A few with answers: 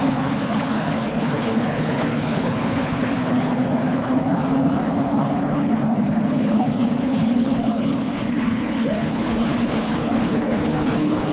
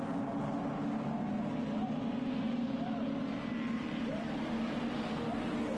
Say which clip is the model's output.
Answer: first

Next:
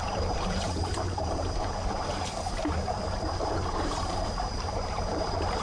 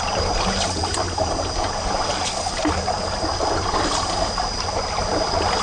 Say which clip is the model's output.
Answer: first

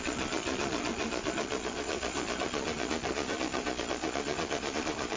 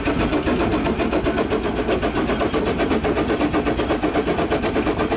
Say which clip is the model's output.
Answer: first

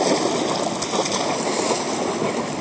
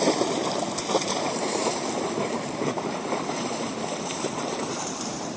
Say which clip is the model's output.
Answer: second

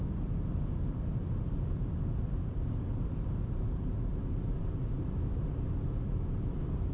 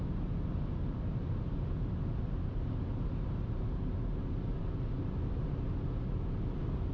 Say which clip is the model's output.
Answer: first